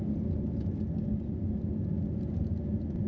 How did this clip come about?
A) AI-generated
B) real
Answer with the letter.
B